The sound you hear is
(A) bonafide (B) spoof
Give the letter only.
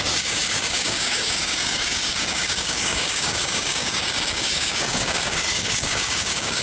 B